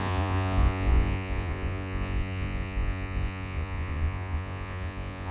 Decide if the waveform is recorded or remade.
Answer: remade